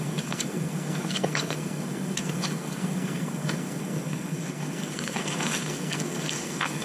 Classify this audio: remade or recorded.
remade